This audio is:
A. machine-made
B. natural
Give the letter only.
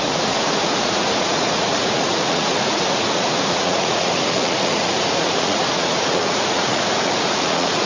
A